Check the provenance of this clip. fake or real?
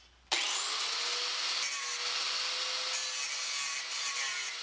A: real